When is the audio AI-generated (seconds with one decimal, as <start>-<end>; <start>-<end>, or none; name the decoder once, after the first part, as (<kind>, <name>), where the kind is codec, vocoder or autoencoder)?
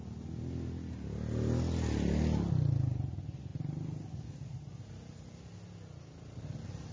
none